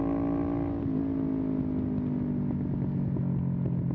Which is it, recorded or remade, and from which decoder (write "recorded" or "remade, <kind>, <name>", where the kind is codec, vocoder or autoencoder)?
recorded